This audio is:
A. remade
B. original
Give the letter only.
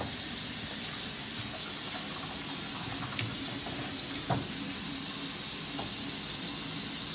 B